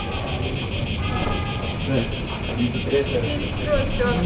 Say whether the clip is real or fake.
real